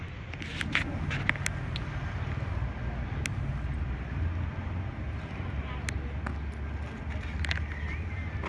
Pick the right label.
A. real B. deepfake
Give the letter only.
A